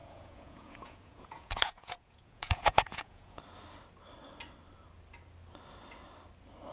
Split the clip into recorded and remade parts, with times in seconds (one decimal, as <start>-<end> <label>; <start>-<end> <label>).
0.0-3.4 remade; 3.4-6.7 recorded